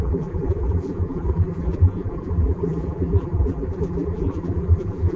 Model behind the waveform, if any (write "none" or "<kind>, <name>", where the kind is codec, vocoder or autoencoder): vocoder, BigVGAN v2